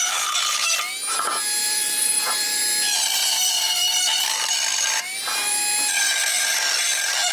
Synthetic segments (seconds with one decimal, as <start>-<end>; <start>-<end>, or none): 1.6-2.6; 3.2-6.0